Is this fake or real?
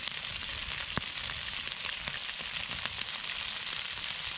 real